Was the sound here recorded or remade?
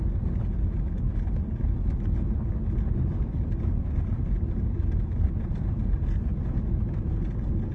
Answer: recorded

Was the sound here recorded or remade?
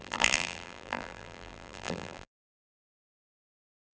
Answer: remade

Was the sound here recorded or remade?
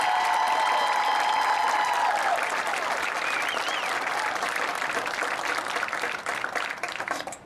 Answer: remade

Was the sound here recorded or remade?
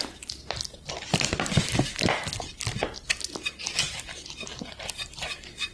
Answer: recorded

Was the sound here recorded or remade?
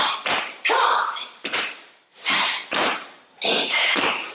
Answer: remade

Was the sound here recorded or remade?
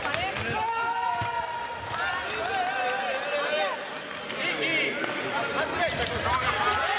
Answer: recorded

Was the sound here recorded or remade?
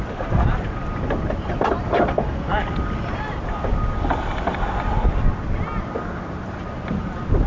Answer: recorded